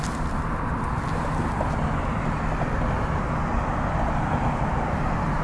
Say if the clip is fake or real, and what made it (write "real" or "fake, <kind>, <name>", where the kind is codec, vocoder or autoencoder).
real